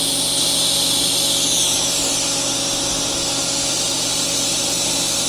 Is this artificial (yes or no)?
no